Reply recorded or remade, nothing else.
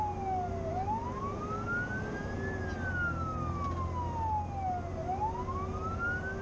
recorded